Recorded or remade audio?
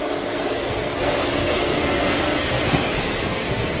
remade